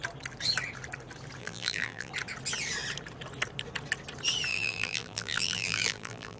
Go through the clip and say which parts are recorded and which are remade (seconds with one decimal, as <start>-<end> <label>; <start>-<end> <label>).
0.0-1.4 recorded; 1.4-2.1 remade; 2.1-4.5 recorded; 4.5-6.4 remade